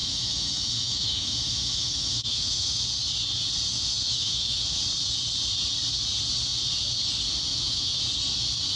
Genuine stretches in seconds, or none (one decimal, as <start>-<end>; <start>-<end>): 2.8-3.7; 4.8-7.5; 8.0-8.8